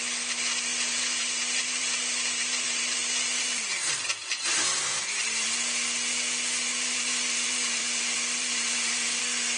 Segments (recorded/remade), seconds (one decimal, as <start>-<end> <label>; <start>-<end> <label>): 0.0-0.7 recorded; 0.7-3.8 remade; 3.8-4.2 recorded; 4.2-5.5 remade; 5.5-6.7 recorded; 6.7-9.2 remade; 9.2-9.6 recorded